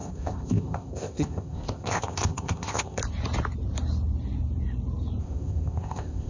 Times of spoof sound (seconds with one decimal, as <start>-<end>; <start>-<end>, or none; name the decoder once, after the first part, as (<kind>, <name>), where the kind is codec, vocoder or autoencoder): 0.0-3.0 (codec, ZipCodec); 5.2-6.3